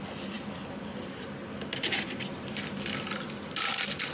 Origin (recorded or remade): recorded